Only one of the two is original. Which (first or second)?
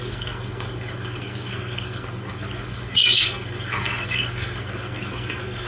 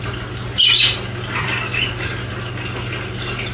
second